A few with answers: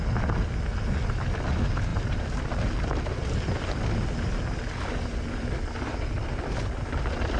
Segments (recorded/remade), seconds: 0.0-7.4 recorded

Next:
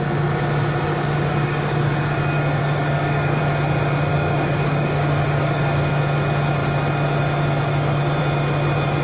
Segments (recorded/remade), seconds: 0.0-0.9 recorded; 0.9-1.9 remade; 1.9-2.6 recorded; 2.6-3.4 remade; 3.4-4.1 recorded; 4.1-5.9 remade; 5.9-9.0 recorded

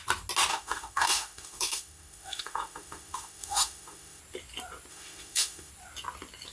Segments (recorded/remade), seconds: 0.0-0.5 recorded; 0.5-4.2 remade; 4.2-4.9 recorded; 4.9-5.7 remade; 5.7-6.5 recorded

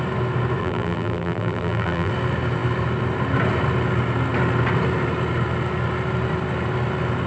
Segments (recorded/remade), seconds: 0.0-0.6 recorded; 0.6-2.1 remade; 2.1-7.3 recorded